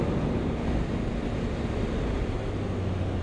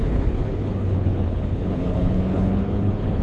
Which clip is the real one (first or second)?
first